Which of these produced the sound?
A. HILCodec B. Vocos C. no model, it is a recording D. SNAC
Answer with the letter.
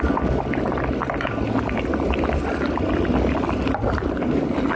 C